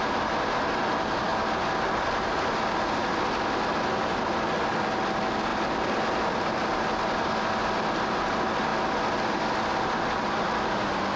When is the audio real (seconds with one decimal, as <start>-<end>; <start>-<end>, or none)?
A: 0.0-11.2